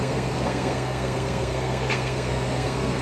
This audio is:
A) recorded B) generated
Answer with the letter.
B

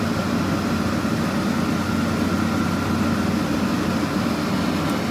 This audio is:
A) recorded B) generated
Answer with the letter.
A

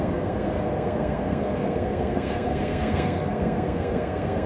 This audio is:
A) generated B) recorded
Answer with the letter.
A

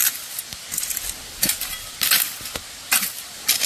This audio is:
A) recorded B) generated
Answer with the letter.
A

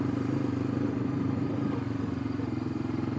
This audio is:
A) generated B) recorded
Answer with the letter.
A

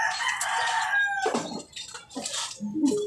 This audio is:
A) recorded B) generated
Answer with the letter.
A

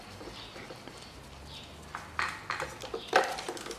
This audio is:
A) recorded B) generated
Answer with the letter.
A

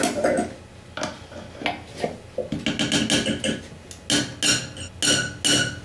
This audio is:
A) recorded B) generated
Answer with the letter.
A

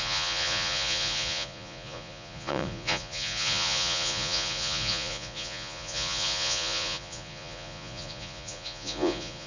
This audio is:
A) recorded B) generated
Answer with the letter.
B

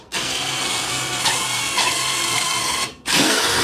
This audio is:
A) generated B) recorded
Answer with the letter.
A